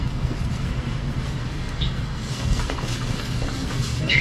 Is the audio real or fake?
fake